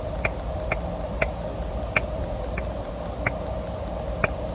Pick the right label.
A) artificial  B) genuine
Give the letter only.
B